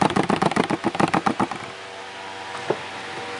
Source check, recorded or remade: recorded